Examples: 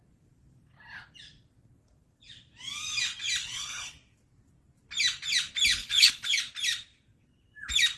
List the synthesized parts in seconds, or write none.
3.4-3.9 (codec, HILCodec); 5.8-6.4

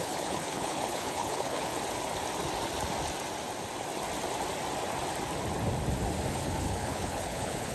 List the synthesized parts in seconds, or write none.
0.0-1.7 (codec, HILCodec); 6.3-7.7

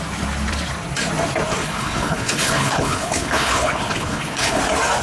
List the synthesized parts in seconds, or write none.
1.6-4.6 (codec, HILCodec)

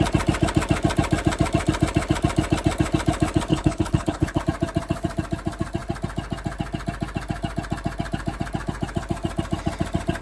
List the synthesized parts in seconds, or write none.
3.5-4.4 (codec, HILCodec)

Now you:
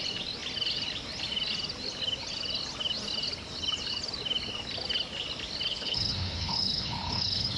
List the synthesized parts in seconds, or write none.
5.7-7.6 (codec, HILCodec)

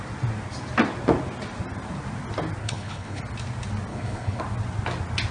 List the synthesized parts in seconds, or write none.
2.6-3.2 (codec, HILCodec); 3.9-4.4